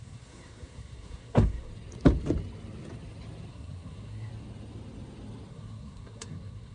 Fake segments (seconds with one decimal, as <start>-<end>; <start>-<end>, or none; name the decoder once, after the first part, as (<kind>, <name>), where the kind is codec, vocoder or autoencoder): 0.0-1.7 (codec, SNAC); 3.5-4.3; 5.5-6.7